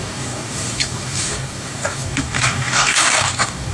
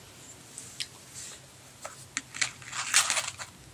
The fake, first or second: first